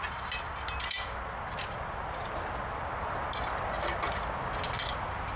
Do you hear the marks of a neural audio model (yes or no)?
no